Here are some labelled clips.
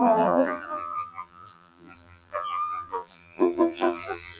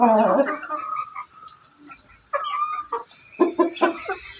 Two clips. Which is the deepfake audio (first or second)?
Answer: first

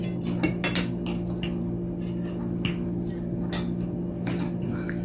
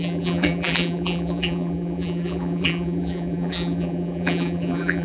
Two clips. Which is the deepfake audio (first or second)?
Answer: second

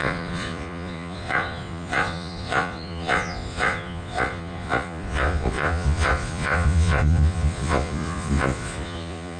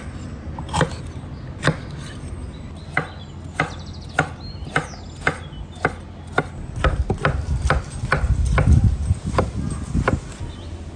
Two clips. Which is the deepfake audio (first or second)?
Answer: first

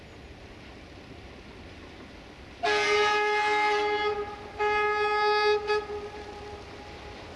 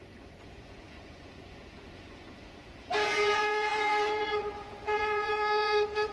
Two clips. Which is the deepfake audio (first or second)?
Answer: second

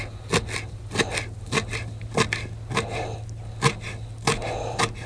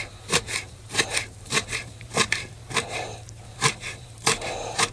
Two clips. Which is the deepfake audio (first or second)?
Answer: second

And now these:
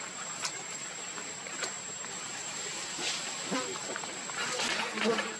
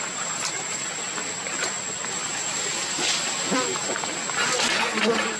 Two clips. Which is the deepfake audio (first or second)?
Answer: first